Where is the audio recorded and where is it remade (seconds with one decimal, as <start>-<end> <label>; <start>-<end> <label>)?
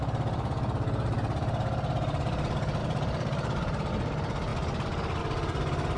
0.0-2.8 recorded; 2.8-3.9 remade; 3.9-6.0 recorded